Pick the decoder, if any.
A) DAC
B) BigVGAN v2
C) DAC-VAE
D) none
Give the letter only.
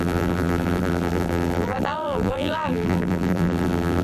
B